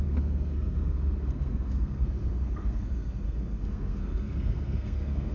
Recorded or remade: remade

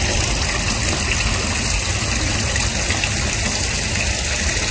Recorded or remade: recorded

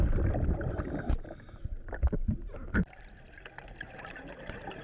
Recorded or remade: recorded